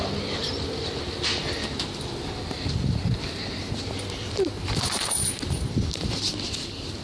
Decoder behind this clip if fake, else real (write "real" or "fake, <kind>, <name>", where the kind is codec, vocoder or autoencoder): real